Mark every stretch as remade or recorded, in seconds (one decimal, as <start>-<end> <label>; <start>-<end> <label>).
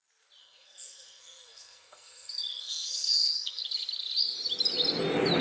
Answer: 0.0-0.4 recorded; 0.4-3.6 remade; 3.6-5.4 recorded